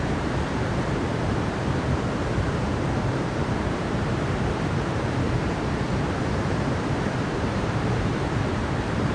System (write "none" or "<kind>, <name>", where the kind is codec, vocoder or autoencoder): vocoder, BigVGAN v2